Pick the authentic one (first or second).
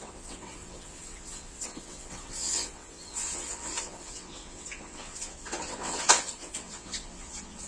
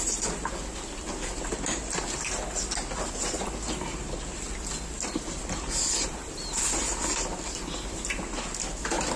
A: second